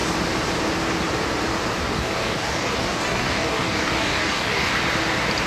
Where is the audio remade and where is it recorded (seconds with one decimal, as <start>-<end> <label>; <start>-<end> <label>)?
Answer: 0.0-1.8 recorded; 1.8-4.8 remade; 4.8-5.5 recorded